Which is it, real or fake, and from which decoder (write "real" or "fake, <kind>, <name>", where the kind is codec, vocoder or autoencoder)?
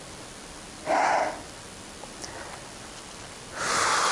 real